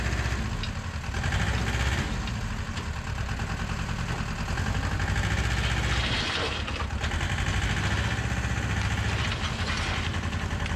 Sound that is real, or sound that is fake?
real